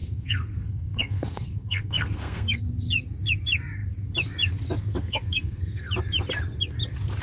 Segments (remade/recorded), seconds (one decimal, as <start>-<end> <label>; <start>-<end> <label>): 0.0-2.6 remade; 2.6-4.9 recorded; 4.9-5.9 remade; 5.9-7.2 recorded